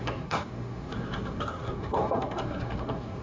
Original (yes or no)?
no